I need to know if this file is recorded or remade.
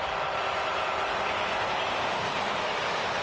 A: recorded